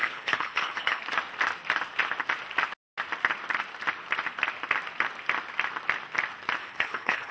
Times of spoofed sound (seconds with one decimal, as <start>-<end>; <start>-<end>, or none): 0.0-1.0; 6.6-7.3